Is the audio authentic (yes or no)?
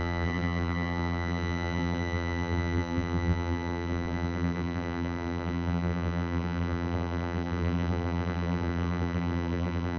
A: no